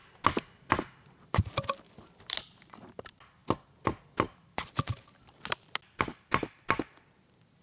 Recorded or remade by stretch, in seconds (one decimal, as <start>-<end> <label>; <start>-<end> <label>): 0.0-7.6 recorded